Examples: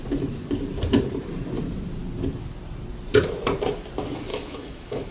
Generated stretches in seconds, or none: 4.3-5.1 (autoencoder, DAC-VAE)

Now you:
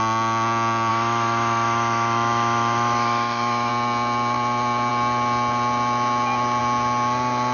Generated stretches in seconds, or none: 0.9-3.7 (autoencoder, DAC-VAE)

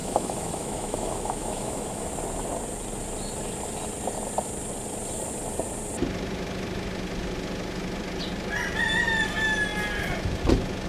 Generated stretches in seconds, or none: 0.0-2.1 (autoencoder, DAC-VAE)

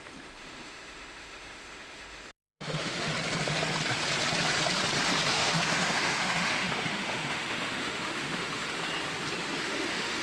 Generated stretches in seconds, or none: 0.0-3.1 (autoencoder, DAC-VAE); 5.3-8.8; 9.6-10.2